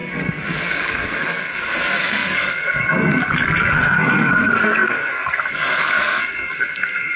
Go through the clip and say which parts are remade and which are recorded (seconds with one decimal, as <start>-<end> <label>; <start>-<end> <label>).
0.0-7.2 remade